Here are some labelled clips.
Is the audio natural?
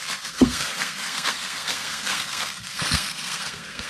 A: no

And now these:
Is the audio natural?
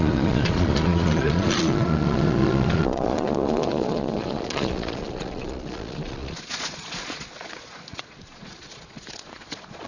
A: no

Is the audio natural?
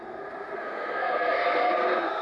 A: no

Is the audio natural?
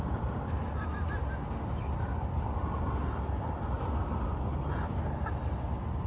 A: yes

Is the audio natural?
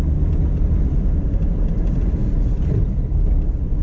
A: yes